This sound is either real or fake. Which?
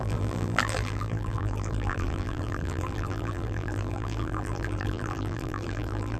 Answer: fake